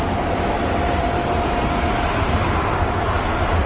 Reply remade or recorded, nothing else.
remade